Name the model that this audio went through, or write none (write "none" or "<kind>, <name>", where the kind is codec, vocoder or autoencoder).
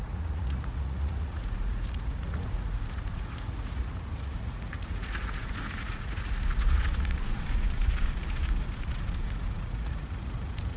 vocoder, Vocos